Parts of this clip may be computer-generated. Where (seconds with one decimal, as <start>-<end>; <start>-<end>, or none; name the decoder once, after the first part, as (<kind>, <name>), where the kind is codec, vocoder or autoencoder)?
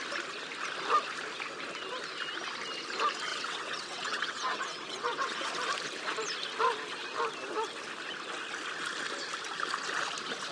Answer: 3.3-5.5 (vocoder, WaveNeXt)